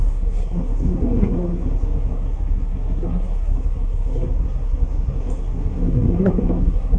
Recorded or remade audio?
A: remade